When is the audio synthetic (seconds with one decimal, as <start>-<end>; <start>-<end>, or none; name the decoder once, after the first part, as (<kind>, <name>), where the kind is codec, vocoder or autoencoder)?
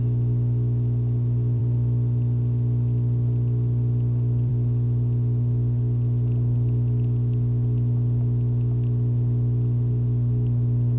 none